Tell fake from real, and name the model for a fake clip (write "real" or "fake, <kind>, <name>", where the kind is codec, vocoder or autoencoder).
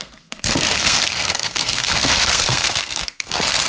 fake, codec, SNAC